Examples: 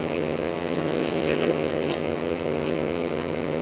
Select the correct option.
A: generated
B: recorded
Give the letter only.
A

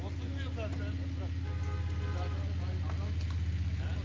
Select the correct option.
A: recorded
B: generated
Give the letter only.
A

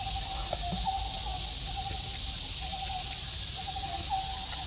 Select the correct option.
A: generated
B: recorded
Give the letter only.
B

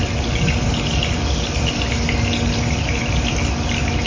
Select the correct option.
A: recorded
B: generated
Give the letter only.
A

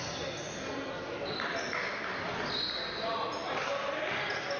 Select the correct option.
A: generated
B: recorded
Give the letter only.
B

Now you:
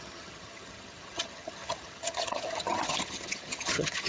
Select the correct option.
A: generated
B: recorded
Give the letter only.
A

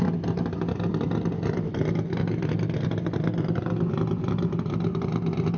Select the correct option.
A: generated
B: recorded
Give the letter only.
B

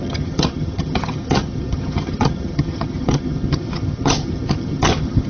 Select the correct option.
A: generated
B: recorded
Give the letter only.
A